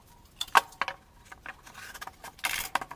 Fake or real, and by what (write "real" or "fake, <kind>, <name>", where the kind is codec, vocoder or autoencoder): real